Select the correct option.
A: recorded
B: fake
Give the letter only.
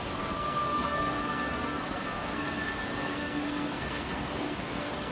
B